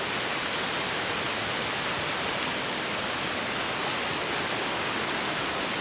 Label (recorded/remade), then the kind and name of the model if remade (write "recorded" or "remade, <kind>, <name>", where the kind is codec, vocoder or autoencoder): recorded